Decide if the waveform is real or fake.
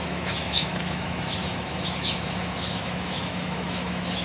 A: fake